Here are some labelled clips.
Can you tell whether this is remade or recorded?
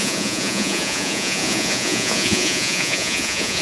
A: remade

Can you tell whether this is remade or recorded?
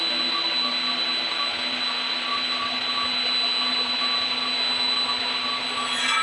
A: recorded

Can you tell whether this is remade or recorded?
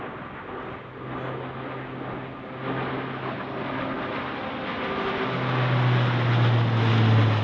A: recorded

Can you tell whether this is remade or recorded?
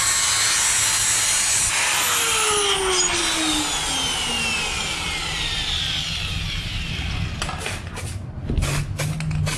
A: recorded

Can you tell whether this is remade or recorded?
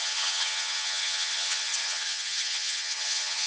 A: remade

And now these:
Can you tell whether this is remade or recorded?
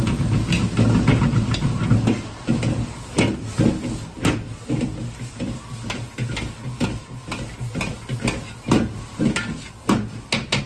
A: recorded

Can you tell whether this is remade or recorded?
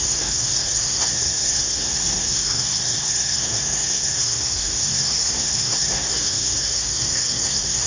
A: remade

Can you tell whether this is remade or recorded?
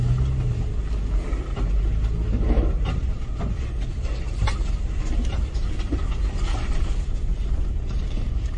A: recorded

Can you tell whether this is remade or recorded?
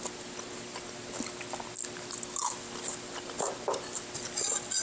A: recorded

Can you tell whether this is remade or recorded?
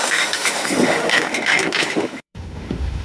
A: remade